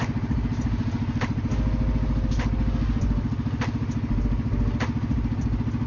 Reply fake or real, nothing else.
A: real